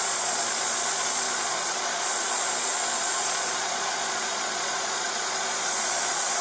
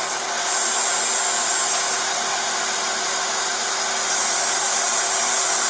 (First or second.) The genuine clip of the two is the second